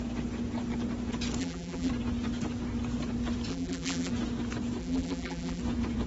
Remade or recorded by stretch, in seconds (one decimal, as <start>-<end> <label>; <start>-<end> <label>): 0.0-1.4 recorded; 1.4-1.9 remade; 1.9-3.5 recorded; 3.5-4.1 remade; 4.1-4.8 recorded; 4.8-5.6 remade; 5.6-6.1 recorded

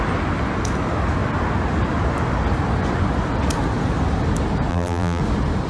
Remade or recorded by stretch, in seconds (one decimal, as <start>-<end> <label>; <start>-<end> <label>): 0.0-4.7 recorded; 4.7-5.2 remade; 5.2-5.7 recorded

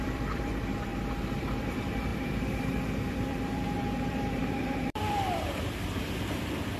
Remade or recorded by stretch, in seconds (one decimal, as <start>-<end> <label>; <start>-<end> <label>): 0.0-0.9 remade; 0.9-1.4 recorded; 1.4-6.8 remade

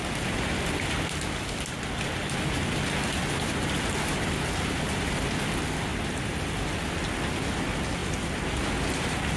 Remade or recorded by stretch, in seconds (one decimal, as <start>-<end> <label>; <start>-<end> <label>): 0.0-9.4 recorded

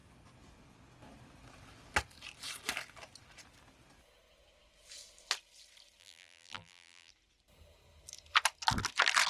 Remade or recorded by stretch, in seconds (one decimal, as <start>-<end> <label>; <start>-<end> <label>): 0.0-6.0 recorded; 6.0-7.1 remade; 7.1-9.3 recorded

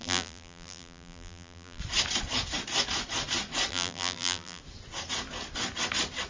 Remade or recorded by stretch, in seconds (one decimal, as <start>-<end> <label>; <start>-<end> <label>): 0.0-1.8 remade; 1.8-3.7 recorded; 3.7-4.6 remade; 4.6-6.3 recorded

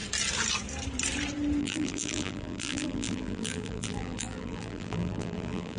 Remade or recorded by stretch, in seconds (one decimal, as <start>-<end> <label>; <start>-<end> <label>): 0.0-1.6 recorded; 1.6-5.8 remade